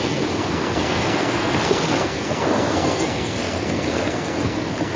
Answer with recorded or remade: remade